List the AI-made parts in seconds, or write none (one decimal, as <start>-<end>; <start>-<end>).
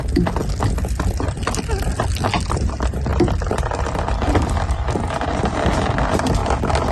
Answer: 3.1-5.6; 6.4-6.9